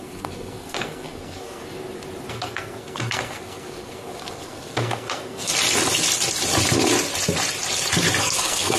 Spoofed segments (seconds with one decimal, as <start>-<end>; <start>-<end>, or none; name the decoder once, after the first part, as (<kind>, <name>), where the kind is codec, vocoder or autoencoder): 0.0-1.6 (codec, SNAC); 2.3-5.5; 8.2-8.8